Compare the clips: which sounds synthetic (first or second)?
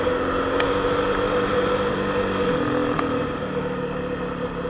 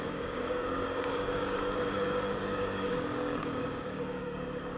second